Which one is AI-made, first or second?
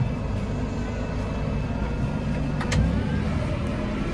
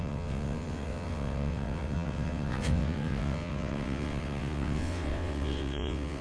second